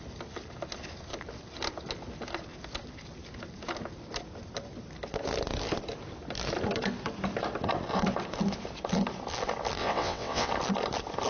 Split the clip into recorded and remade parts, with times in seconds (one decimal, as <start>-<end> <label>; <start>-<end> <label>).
0.0-9.8 recorded; 9.8-10.5 remade; 10.5-11.3 recorded